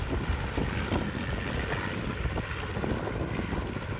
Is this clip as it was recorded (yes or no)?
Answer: yes